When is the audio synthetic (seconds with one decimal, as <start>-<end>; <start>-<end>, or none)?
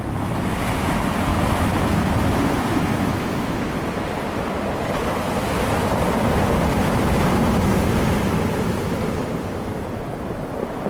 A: 1.3-3.8